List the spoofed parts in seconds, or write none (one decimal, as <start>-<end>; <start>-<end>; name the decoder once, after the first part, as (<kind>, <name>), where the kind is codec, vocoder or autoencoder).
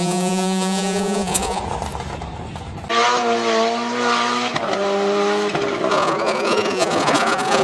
0.0-1.6 (vocoder, Vocos); 5.9-7.6